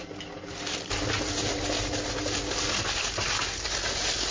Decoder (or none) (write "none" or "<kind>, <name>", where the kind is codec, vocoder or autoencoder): none